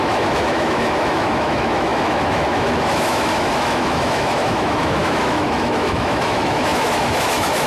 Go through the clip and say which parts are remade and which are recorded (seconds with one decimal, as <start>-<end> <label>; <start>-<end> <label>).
0.0-7.7 remade